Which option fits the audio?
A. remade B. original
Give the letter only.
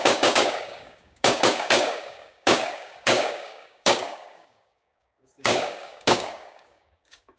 A